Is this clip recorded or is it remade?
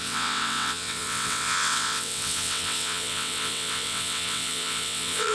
remade